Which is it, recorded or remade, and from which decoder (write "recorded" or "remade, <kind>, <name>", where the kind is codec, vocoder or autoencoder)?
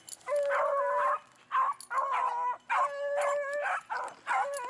recorded